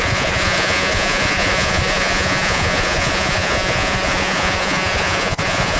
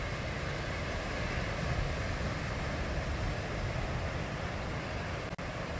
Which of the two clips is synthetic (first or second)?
first